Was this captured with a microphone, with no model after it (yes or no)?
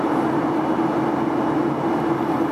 yes